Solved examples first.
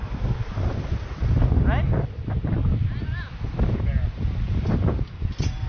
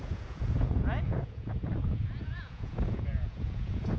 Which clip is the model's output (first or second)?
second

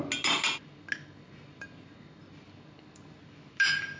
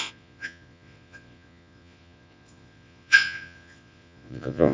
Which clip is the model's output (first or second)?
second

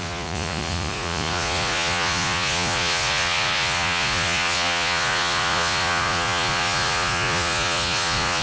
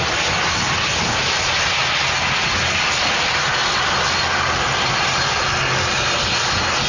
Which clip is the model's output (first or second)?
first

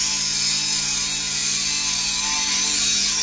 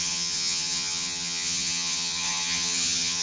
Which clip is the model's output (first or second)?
second